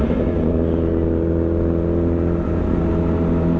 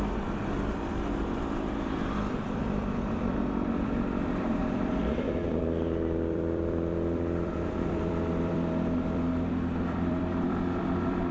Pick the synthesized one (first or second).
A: second